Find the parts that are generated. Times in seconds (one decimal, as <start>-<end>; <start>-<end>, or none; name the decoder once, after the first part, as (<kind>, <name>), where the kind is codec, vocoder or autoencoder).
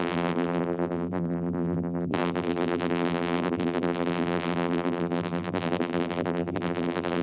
0.0-7.2 (vocoder, BigVGAN v2)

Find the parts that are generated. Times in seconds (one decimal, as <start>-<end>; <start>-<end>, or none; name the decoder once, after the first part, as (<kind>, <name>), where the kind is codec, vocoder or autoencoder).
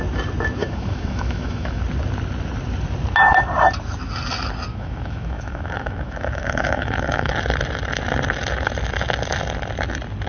0.6-1.8 (autoencoder, DAC-VAE); 4.7-7.3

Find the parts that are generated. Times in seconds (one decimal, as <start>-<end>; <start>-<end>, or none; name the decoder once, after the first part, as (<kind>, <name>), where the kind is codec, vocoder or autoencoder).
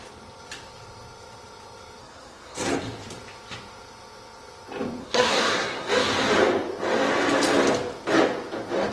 2.0-2.7 (codec, SNAC); 5.0-5.9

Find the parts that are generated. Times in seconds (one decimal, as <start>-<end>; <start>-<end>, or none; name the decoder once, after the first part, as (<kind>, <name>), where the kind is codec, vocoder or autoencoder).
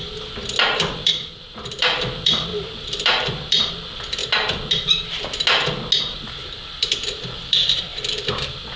0.0-1.1 (vocoder, BigVGAN v2); 1.8-4.2; 6.0-8.8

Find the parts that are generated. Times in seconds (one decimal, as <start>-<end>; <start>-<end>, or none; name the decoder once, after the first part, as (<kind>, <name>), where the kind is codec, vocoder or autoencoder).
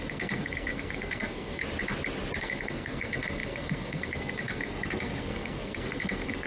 0.0-1.6 (codec, SNAC); 2.4-6.5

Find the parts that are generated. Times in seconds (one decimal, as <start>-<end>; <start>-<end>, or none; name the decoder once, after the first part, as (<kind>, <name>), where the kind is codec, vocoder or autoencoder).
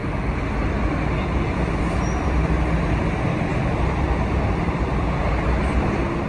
none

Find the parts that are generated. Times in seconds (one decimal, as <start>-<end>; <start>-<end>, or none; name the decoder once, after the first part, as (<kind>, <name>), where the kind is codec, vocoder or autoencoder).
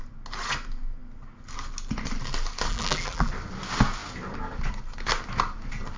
2.7-3.3 (vocoder, BigVGAN v2)